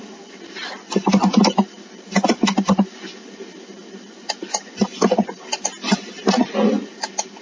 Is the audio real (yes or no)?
yes